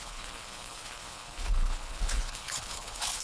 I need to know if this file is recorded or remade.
remade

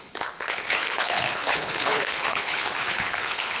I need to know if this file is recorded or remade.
remade